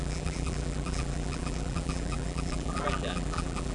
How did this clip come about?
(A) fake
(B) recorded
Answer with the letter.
A